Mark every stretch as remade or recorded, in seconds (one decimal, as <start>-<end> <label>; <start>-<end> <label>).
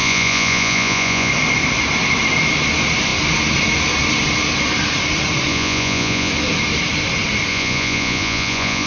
0.0-1.3 remade; 1.3-5.5 recorded; 5.5-6.3 remade; 6.3-7.5 recorded; 7.5-8.9 remade